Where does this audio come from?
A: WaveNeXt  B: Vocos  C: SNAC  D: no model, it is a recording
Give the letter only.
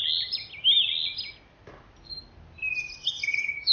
D